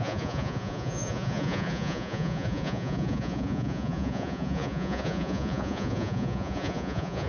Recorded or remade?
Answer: remade